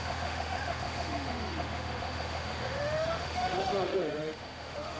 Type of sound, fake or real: fake